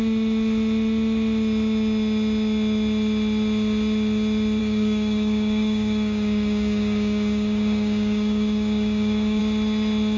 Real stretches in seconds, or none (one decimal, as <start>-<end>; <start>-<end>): 0.0-4.6; 9.4-10.2